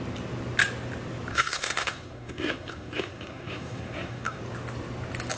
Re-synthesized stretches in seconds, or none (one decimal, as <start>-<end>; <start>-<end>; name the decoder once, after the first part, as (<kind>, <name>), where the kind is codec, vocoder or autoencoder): 1.3-4.4 (codec, SNAC)